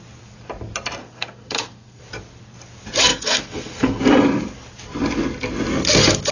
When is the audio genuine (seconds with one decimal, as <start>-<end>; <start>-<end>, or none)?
0.0-1.0; 2.0-3.1; 4.0-6.3